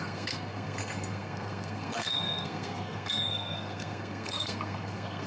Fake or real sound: fake